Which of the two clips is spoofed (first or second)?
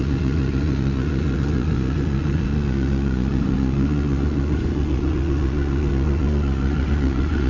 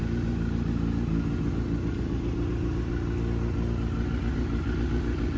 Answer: first